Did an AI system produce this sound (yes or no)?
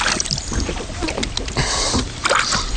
no